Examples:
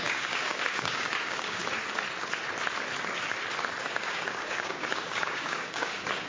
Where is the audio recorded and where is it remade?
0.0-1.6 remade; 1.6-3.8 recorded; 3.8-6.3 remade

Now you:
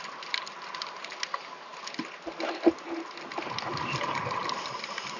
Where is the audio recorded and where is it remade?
0.0-5.2 recorded

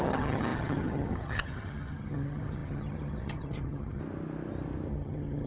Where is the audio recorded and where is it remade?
0.0-4.0 remade; 4.0-4.9 recorded; 4.9-5.5 remade

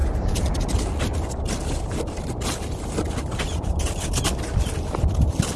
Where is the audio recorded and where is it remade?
0.0-5.6 recorded

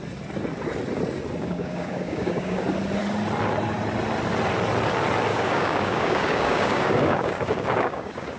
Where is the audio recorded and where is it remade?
0.0-1.4 recorded; 1.4-2.6 remade; 2.6-5.3 recorded; 5.3-8.4 remade

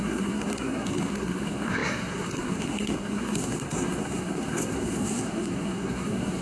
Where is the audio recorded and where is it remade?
0.0-6.4 remade